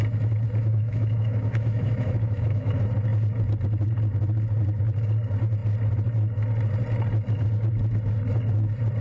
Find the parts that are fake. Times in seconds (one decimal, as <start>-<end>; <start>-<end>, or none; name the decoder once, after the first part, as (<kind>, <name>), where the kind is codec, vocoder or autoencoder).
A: 0.6-2.7 (autoencoder, DAC-VAE)